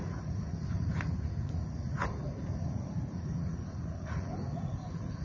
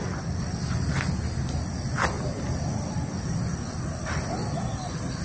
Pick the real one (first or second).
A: second